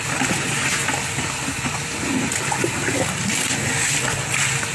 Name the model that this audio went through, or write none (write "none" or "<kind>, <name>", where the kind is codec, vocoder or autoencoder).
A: none